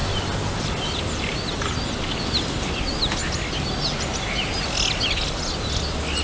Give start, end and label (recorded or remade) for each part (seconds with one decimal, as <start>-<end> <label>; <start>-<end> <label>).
0.0-6.2 recorded